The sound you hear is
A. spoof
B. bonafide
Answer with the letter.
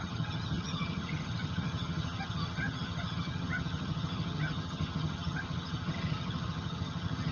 A